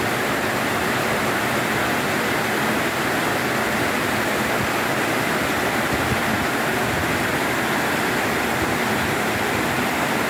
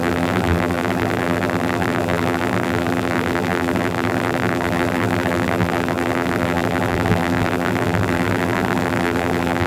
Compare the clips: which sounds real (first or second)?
first